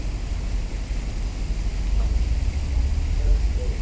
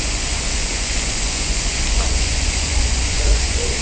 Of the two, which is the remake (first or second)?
second